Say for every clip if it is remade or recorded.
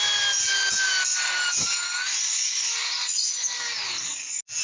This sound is recorded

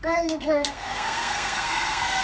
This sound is remade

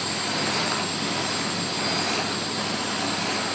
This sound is recorded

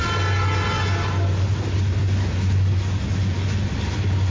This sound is recorded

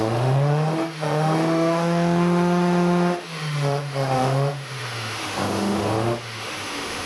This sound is remade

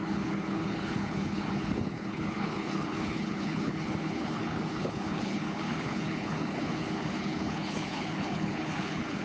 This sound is remade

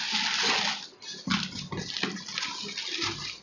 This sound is recorded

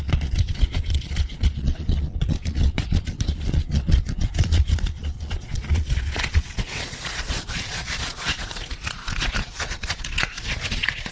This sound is remade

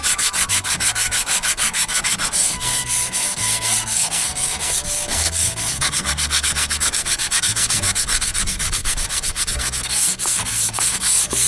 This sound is remade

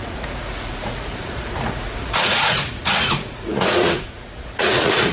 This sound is remade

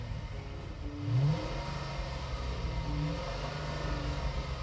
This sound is recorded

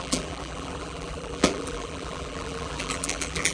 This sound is remade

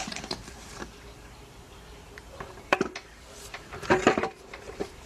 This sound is remade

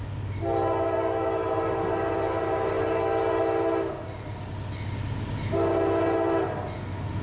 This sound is recorded